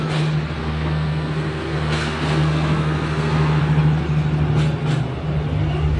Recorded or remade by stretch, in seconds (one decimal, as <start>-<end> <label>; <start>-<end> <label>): 0.0-0.6 recorded; 0.6-3.6 remade; 3.6-6.0 recorded